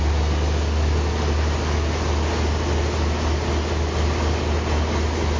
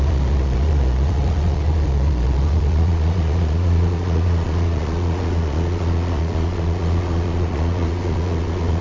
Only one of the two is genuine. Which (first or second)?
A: first